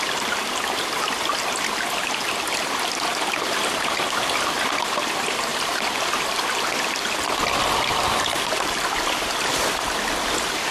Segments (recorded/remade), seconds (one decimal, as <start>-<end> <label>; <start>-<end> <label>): 0.0-10.7 recorded